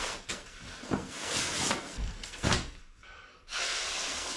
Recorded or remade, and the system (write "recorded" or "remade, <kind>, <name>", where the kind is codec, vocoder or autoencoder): remade, codec, SNAC